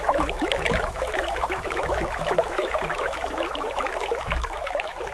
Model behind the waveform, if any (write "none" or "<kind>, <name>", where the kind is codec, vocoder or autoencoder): autoencoder, DAC-VAE